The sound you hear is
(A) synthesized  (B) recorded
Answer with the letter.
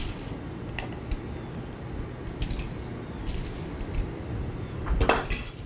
B